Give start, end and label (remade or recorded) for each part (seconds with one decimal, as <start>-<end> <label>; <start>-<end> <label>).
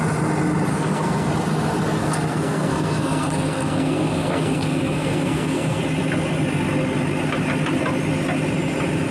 0.0-0.7 recorded; 0.7-1.3 remade; 1.3-2.0 recorded; 2.0-5.8 remade; 5.8-9.1 recorded